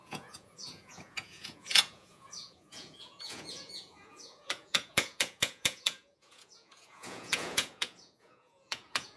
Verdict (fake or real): fake